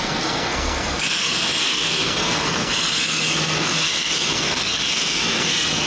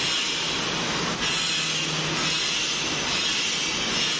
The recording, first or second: second